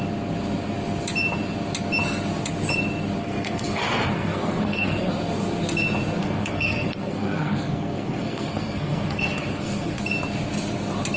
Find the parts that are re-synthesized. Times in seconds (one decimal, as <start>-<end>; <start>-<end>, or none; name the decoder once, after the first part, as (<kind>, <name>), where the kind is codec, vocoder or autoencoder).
3.2-5.1 (codec, SNAC); 6.2-10.0